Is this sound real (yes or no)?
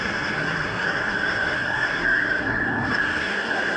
no